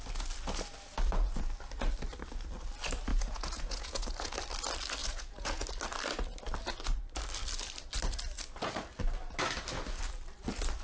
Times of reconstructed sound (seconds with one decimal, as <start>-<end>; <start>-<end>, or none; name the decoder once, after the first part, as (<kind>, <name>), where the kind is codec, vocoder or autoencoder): 3.1-4.3 (vocoder, Vocos); 5.0-5.6